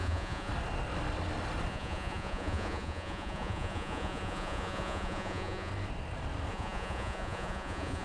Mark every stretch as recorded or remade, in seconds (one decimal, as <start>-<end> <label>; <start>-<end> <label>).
0.0-0.5 remade; 0.5-1.7 recorded; 1.7-5.7 remade; 5.7-6.5 recorded; 6.5-8.0 remade